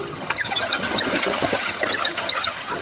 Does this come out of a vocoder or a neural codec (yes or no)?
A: yes